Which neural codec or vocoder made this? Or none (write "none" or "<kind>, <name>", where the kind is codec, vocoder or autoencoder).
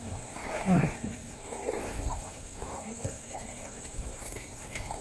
codec, SNAC